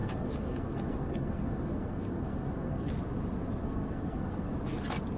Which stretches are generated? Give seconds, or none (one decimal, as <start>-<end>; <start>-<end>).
0.0-2.9; 3.6-4.5